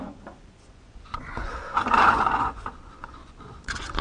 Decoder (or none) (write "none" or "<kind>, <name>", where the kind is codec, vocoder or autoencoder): vocoder, Vocos